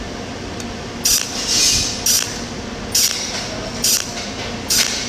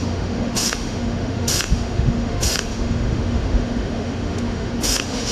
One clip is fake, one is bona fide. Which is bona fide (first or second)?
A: first